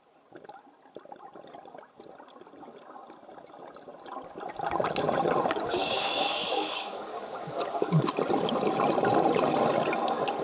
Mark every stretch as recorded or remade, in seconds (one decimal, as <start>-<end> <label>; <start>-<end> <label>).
0.0-5.8 recorded; 5.8-8.1 remade; 8.1-10.4 recorded